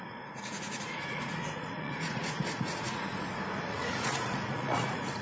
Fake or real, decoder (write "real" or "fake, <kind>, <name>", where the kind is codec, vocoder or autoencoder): fake, vocoder, Vocos